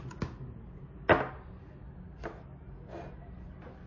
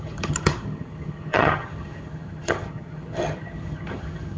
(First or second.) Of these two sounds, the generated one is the second